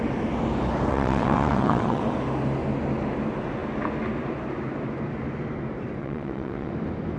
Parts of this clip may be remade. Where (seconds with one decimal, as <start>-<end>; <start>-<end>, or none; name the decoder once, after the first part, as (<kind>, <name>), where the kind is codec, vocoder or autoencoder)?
0.9-2.0 (vocoder, WaveNeXt); 6.0-6.7